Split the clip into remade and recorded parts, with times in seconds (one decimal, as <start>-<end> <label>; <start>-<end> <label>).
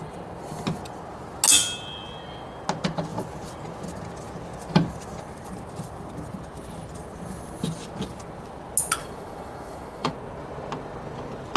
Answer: 0.0-9.0 recorded; 9.0-10.1 remade; 10.1-11.6 recorded